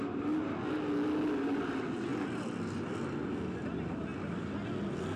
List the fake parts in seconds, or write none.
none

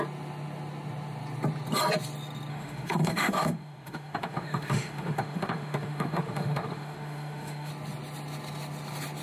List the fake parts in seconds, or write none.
2.5-7.7

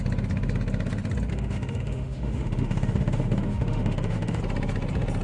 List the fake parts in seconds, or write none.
1.3-4.4

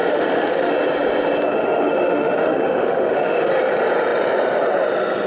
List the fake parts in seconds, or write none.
0.0-0.7; 1.5-3.5

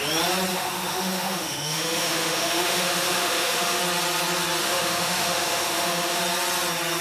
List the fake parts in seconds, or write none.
0.5-3.8; 4.6-6.2

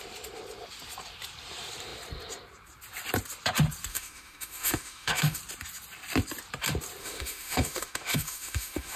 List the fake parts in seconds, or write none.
3.9-5.4; 7.0-9.0

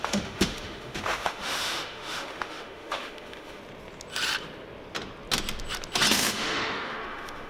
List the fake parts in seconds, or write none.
0.0-3.6; 6.1-7.5